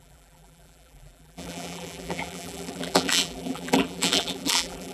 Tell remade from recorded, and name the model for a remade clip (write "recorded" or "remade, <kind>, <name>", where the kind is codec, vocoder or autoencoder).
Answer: remade, vocoder, BigVGAN v2